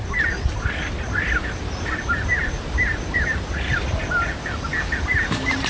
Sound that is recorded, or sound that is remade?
recorded